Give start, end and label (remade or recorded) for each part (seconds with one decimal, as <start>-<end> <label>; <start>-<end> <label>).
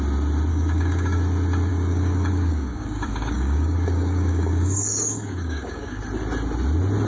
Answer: 0.0-0.5 recorded; 0.5-1.2 remade; 1.2-1.7 recorded; 1.7-6.0 remade; 6.0-7.1 recorded